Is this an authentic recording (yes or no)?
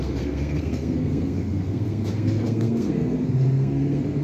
no